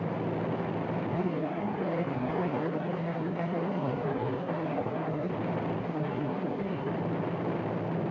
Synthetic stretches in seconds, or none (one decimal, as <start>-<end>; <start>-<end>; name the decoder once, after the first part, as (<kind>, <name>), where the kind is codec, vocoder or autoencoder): 1.1-5.3 (codec, SNAC); 5.8-6.9